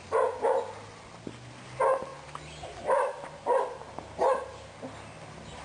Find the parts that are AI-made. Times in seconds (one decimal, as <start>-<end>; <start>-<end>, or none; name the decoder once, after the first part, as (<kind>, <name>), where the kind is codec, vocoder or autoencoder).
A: none